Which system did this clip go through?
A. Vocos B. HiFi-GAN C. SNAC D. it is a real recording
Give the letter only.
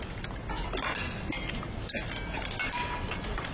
D